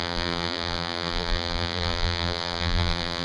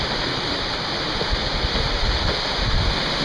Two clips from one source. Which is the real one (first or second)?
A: second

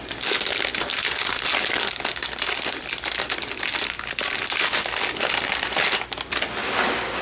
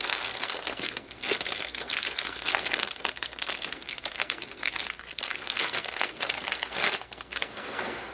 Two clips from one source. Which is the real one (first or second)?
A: first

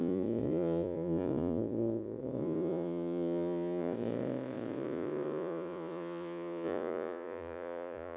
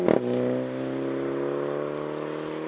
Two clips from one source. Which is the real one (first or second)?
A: second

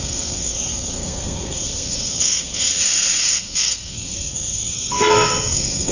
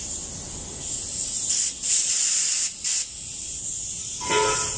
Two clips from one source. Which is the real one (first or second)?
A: second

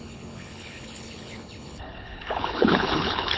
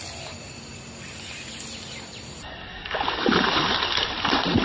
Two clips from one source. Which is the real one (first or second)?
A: second